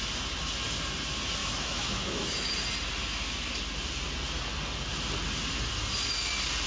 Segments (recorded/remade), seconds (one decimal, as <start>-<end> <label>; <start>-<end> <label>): 0.0-1.4 recorded; 1.4-2.5 remade; 2.5-6.7 recorded